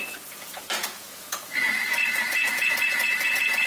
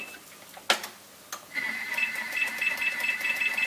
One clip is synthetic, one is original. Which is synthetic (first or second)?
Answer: first